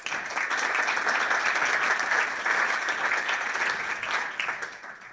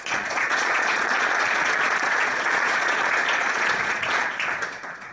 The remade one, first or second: second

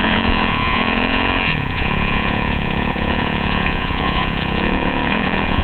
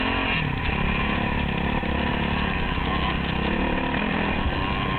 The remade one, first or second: first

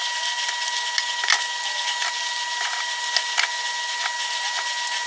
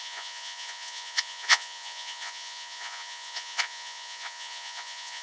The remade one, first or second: second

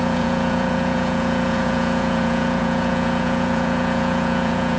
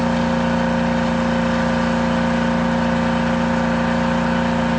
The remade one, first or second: first